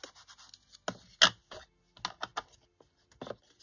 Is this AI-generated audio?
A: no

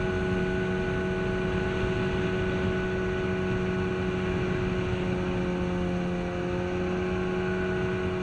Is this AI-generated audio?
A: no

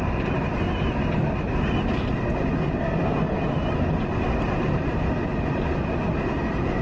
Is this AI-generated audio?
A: no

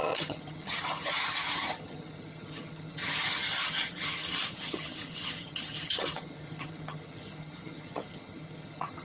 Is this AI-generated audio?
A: yes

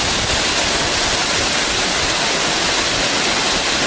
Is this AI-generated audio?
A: no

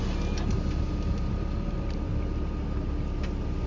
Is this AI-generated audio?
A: no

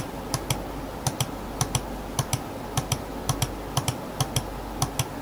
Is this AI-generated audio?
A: no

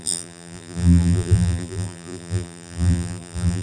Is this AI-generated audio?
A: yes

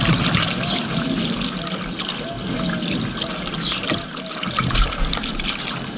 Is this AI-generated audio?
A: no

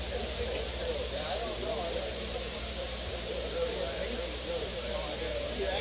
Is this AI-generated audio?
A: yes